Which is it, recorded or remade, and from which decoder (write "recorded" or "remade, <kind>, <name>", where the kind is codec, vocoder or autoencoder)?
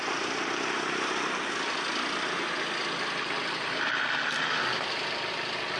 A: recorded